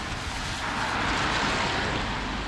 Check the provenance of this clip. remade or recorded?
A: recorded